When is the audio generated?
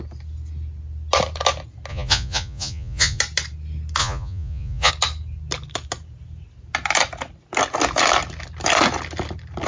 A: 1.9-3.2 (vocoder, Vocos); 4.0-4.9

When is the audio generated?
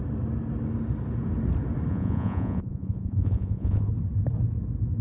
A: 1.9-3.9 (vocoder, Vocos)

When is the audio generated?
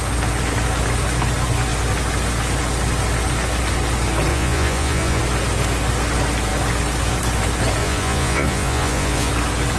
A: 4.3-5.2 (vocoder, Vocos); 7.8-9.3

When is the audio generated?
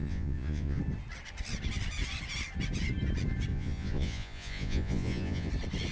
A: 0.0-0.8 (vocoder, Vocos); 3.5-5.5